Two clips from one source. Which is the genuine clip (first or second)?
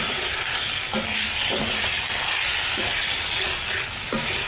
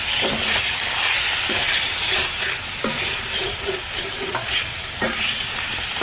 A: first